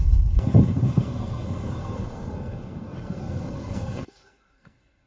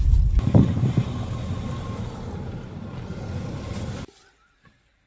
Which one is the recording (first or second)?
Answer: second